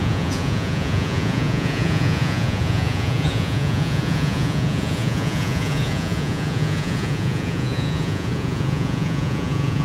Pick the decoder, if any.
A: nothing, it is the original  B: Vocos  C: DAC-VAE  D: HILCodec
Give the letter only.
B